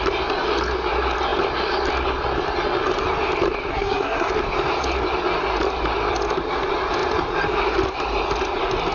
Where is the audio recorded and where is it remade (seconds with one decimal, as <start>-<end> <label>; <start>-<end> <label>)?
0.0-3.7 recorded; 3.7-4.3 remade; 4.3-8.9 recorded